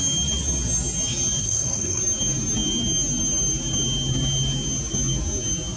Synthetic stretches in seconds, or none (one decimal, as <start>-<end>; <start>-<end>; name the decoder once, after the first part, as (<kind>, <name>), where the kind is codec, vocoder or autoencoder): 1.4-2.0 (codec, SNAC)